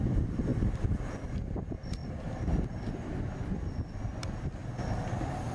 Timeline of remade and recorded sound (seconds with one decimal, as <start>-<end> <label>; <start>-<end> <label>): 0.0-5.5 recorded

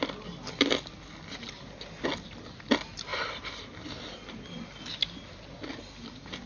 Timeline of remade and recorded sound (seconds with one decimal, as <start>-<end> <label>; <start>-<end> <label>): 0.0-6.5 recorded

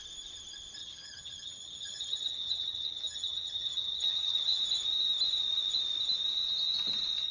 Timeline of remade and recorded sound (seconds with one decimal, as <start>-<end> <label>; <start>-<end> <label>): 0.0-0.8 recorded; 0.8-4.6 remade; 4.6-7.3 recorded

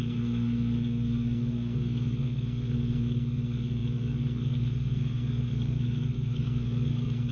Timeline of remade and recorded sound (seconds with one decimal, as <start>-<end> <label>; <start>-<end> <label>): 0.0-7.3 remade

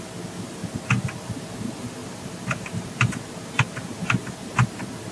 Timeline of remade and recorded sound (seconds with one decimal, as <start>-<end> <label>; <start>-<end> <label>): 0.0-2.0 recorded; 2.0-4.0 remade; 4.0-5.1 recorded

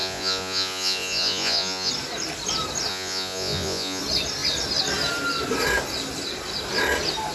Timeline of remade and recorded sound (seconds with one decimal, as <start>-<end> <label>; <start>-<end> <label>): 0.0-1.9 remade; 1.9-2.9 recorded; 2.9-4.0 remade; 4.0-7.3 recorded